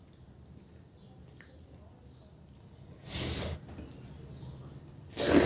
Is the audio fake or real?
real